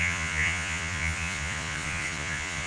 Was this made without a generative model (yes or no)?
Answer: no